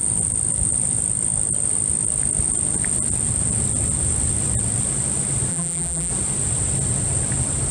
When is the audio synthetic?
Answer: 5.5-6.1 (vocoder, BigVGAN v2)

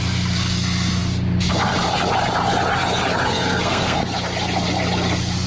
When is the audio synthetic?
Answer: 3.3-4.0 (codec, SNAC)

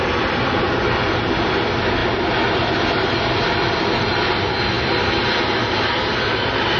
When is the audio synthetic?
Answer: none

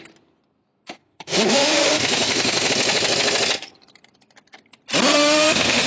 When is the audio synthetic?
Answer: 1.0-2.7 (autoencoder, DAC-VAE); 5.1-5.9

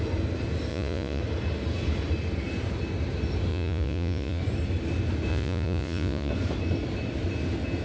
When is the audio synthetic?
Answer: 0.7-1.2 (vocoder, Vocos); 3.5-4.4; 5.3-6.3